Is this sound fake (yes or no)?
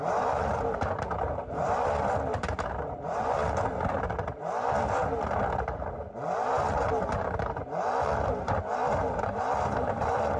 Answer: yes